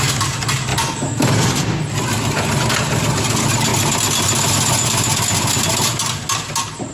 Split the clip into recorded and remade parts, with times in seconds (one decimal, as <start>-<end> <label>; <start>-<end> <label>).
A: 0.0-6.9 recorded